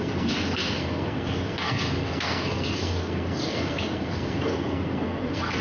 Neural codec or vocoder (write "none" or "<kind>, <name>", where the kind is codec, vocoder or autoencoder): codec, SNAC